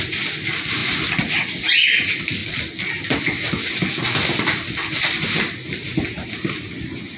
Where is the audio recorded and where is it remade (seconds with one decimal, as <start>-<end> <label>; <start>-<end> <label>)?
0.0-7.2 recorded